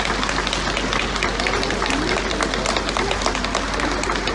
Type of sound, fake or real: real